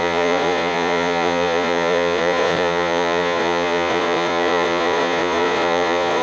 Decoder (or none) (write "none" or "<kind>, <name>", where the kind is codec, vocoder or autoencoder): vocoder, Vocos